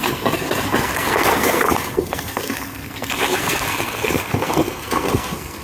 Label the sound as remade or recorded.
remade